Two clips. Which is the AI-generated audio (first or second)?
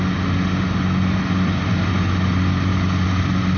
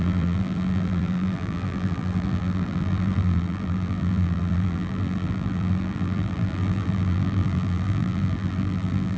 second